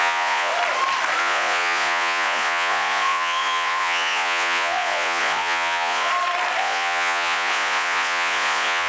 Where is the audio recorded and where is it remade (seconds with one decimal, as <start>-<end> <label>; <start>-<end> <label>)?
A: 0.0-0.5 remade; 0.5-1.2 recorded; 1.2-6.1 remade; 6.1-6.6 recorded; 6.6-8.9 remade